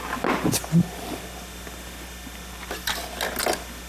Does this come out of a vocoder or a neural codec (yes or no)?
no